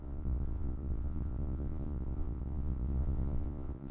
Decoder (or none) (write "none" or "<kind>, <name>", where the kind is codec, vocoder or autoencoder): vocoder, Vocos